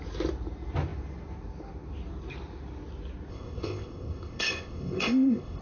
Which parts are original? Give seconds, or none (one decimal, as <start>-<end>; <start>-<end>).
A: 0.0-3.3